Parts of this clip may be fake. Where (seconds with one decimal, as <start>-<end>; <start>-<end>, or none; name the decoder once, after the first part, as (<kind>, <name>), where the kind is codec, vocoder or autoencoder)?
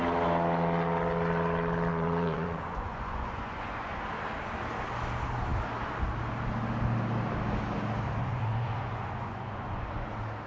1.9-4.0 (vocoder, Vocos); 8.2-10.1